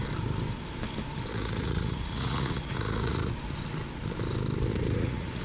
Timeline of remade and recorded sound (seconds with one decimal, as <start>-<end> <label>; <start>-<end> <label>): 0.0-1.3 recorded; 1.3-3.3 remade; 3.3-4.7 recorded; 4.7-5.4 remade